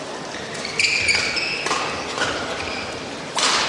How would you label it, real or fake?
real